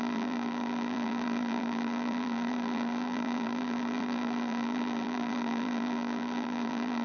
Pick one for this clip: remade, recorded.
remade